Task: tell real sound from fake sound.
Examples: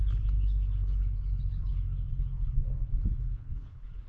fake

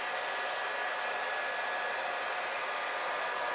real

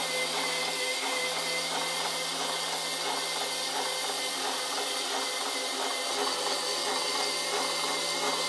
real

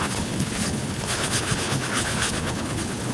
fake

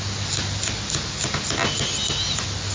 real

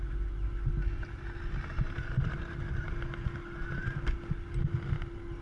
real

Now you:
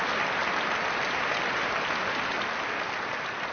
real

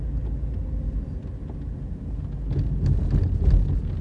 real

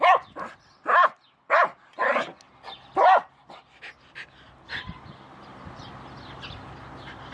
real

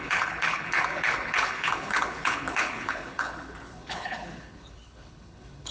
fake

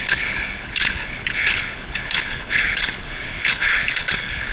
fake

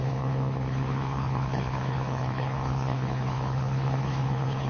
fake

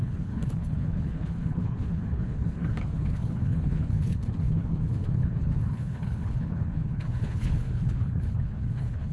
fake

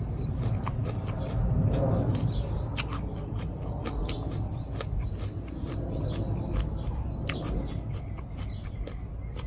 real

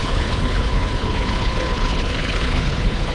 fake